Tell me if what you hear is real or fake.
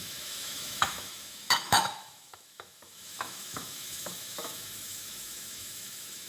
fake